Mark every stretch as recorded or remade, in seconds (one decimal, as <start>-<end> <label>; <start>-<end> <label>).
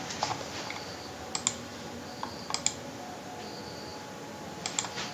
0.0-5.1 recorded